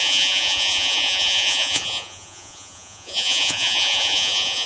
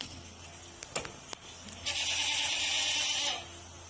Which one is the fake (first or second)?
first